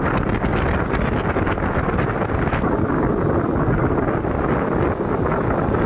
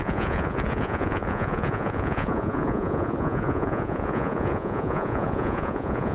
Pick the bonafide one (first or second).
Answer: first